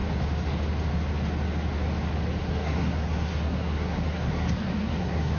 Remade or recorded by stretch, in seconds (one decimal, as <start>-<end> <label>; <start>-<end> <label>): 0.0-2.4 recorded; 2.4-5.4 remade